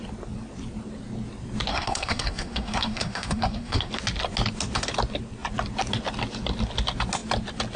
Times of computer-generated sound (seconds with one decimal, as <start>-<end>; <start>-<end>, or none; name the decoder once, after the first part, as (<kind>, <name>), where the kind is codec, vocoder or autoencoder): 1.7-3.9 (codec, SNAC)